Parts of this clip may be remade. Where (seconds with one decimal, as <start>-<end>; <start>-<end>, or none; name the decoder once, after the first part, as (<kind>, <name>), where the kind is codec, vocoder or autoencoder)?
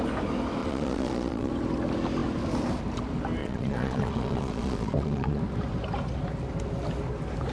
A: 0.6-1.5 (vocoder, Vocos); 3.4-5.4